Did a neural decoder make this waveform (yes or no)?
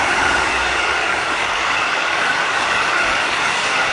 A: yes